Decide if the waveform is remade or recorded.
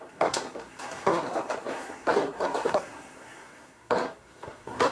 remade